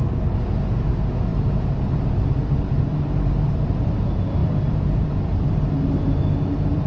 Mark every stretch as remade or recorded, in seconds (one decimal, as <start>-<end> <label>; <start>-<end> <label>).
0.0-1.3 recorded; 1.3-3.9 remade; 3.9-4.4 recorded; 4.4-5.5 remade; 5.5-6.9 recorded